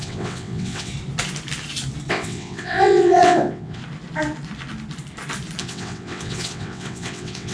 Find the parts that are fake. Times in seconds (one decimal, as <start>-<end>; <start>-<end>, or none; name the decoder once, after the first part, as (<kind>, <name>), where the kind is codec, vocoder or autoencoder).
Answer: 0.0-0.9 (vocoder, WaveNeXt); 2.1-3.8; 5.6-7.5